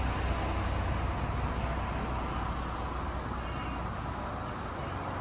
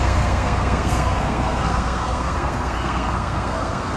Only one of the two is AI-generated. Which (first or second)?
second